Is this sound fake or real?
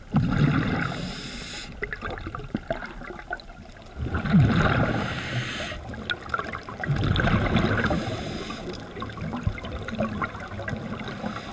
real